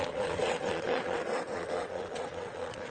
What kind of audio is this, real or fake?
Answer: fake